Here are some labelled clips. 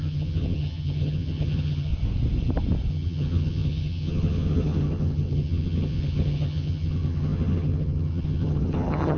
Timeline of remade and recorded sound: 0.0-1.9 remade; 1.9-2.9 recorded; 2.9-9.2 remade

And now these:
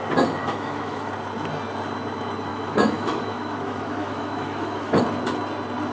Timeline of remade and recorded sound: 0.0-0.4 recorded; 0.4-1.1 remade; 1.1-2.5 recorded; 2.5-5.0 remade; 5.0-5.9 recorded

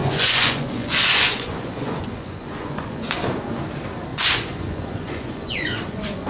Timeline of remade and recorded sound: 0.0-3.2 remade; 3.2-4.1 recorded; 4.1-6.3 remade

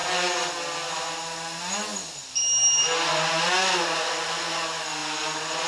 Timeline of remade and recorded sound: 0.0-5.7 recorded